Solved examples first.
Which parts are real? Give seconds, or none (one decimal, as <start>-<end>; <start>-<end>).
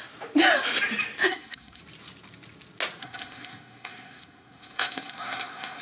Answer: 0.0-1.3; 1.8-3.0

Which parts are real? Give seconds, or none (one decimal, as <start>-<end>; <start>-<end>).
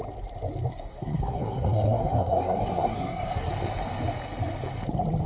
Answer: 0.0-0.7; 3.5-5.3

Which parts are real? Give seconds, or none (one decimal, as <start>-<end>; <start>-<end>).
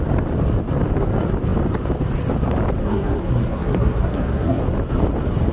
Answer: 0.0-2.8; 4.6-5.5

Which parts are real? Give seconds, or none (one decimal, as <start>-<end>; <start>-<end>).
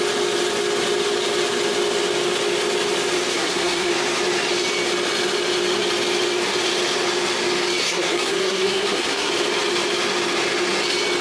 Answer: 0.0-3.3; 3.9-7.8; 9.3-11.2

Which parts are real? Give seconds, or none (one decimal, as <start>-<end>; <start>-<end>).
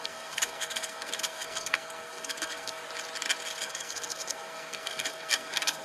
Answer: 2.8-3.6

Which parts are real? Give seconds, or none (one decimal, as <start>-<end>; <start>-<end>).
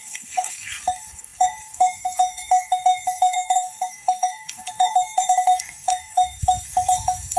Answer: none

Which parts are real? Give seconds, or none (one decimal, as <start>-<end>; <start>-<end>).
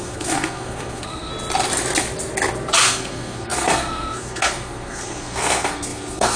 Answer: 1.3-2.8